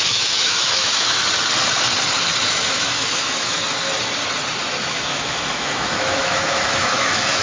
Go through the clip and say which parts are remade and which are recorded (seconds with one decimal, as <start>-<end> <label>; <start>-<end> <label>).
0.0-1.2 remade; 1.2-2.5 recorded; 2.5-3.6 remade; 3.6-4.9 recorded; 4.9-7.4 remade